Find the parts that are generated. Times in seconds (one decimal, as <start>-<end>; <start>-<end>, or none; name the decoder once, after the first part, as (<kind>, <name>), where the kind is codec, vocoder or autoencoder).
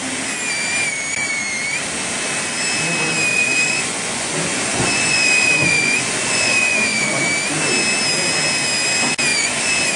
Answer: 3.3-7.2 (vocoder, Vocos); 9.3-10.0